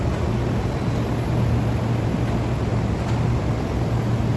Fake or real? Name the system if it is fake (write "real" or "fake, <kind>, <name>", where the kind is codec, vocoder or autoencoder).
real